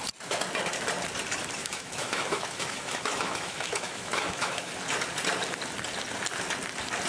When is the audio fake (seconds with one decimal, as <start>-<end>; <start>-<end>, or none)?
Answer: 1.6-4.7